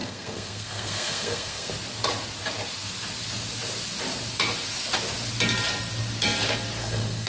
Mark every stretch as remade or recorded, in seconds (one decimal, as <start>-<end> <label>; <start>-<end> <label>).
0.0-1.7 remade; 1.7-6.8 recorded; 6.8-7.3 remade